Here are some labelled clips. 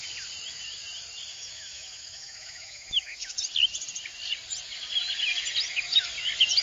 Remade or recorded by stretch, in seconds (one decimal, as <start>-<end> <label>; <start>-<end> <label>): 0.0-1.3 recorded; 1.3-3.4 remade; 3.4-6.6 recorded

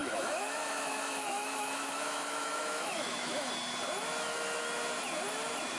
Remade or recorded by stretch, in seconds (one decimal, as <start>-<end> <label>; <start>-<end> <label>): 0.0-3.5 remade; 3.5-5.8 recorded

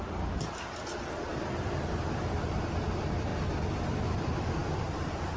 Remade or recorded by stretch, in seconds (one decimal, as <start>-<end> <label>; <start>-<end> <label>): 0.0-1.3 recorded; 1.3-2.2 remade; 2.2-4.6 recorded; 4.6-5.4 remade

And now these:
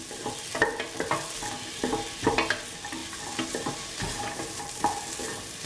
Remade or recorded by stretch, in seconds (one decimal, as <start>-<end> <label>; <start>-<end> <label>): 0.0-5.7 recorded

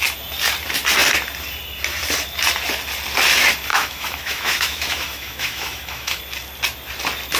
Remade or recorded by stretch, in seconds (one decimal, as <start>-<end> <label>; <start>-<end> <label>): 0.0-3.7 recorded; 3.7-6.2 remade; 6.2-7.4 recorded

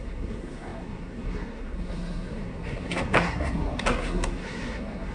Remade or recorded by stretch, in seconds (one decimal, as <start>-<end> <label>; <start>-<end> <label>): 0.0-5.1 remade

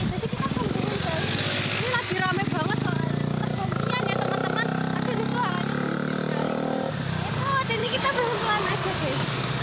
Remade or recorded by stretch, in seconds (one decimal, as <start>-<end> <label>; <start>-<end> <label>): 0.0-7.8 recorded; 7.8-8.4 remade; 8.4-9.6 recorded

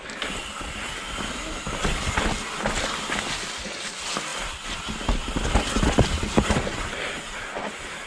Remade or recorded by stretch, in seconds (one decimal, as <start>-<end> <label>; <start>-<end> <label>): 0.0-8.1 recorded